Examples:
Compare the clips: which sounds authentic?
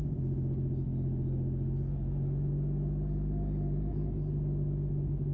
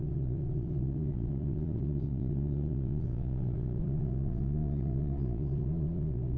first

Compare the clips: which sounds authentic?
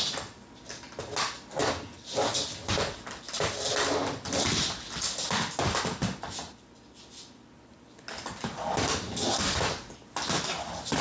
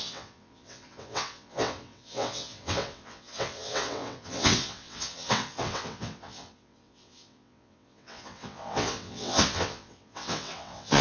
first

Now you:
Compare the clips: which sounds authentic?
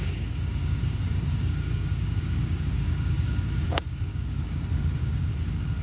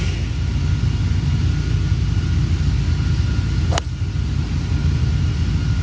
second